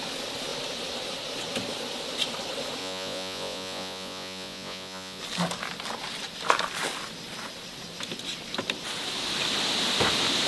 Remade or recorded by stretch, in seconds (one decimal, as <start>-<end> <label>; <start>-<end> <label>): 0.0-2.8 recorded; 2.8-5.2 remade; 5.2-10.5 recorded